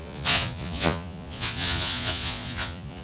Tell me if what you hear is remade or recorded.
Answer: remade